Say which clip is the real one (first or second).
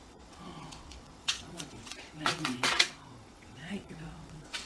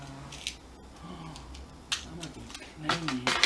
second